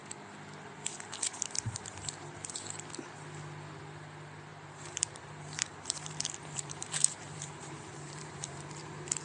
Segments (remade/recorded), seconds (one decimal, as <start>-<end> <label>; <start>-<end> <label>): 0.0-4.5 recorded; 4.5-9.2 remade